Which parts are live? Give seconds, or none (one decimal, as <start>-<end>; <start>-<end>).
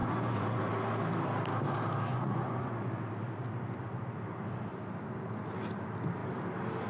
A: 0.7-2.1; 2.9-6.9